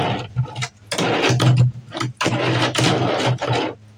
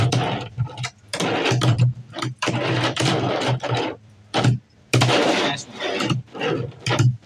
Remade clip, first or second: second